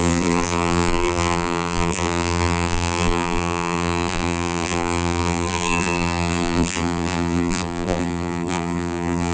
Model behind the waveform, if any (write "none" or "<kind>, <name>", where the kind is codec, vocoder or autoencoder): vocoder, BigVGAN v2